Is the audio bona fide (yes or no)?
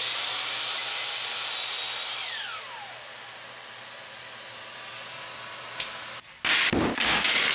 yes